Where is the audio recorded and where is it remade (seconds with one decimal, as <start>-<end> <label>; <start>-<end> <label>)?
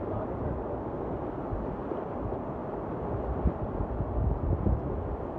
0.0-5.4 recorded